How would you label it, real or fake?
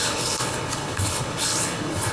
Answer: fake